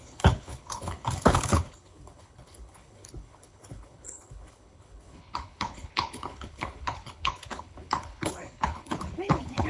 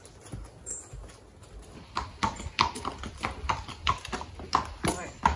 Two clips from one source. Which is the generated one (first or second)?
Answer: first